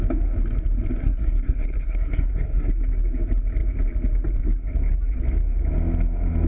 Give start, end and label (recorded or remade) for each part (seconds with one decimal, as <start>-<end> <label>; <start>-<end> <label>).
0.0-1.0 recorded; 1.0-2.7 remade; 2.7-6.5 recorded